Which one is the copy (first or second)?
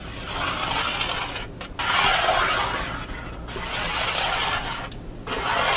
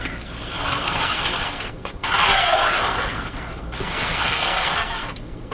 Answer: second